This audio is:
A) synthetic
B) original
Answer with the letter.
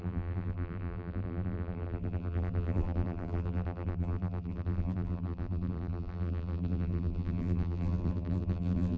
A